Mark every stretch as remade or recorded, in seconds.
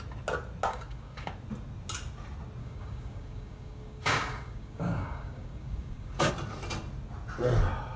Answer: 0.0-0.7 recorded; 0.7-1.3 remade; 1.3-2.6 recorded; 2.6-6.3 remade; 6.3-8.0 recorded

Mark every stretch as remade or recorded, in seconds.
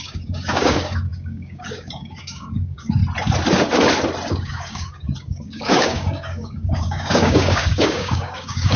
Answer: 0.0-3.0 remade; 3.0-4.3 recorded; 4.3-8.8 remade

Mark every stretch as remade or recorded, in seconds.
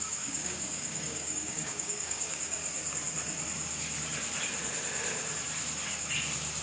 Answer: 0.0-2.6 remade; 2.6-6.6 recorded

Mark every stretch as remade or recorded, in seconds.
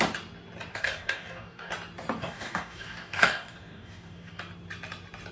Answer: 0.0-0.7 recorded; 0.7-1.7 remade; 1.7-2.2 recorded; 2.2-4.4 remade; 4.4-5.3 recorded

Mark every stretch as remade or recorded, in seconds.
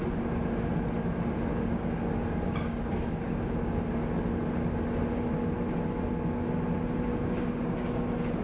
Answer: 0.0-1.5 recorded; 1.5-3.8 remade; 3.8-7.1 recorded; 7.1-7.9 remade; 7.9-8.4 recorded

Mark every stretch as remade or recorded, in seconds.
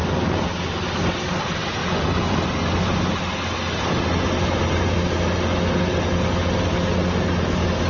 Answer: 0.0-7.9 recorded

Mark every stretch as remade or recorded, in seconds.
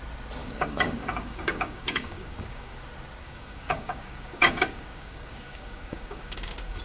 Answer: 0.0-0.4 recorded; 0.4-2.8 remade; 2.8-3.2 recorded; 3.2-6.8 remade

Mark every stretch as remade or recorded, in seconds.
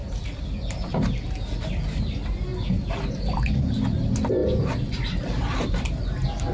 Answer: 0.0-6.5 recorded